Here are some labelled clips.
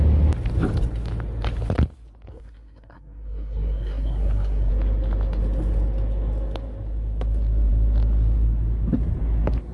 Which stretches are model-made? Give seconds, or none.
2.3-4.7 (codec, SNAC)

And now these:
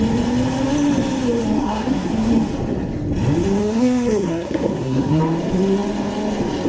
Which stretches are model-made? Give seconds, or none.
1.6-2.3 (codec, SNAC); 3.6-5.2

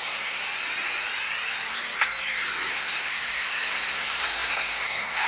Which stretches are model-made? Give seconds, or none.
0.0-0.4 (codec, SNAC); 2.7-5.3

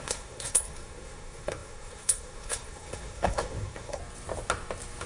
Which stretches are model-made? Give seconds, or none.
0.0-4.0 (codec, SNAC)

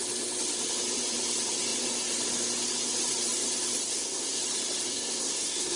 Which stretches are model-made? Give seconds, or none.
3.9-4.4 (codec, SNAC); 4.9-5.8

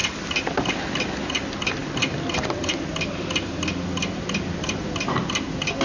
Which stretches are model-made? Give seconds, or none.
none

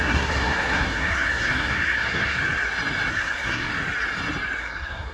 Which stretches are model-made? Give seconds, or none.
0.0-2.4 (codec, SNAC); 3.1-3.7; 4.6-5.1